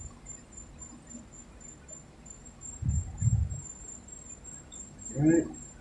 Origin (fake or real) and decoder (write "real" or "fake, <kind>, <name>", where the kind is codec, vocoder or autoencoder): real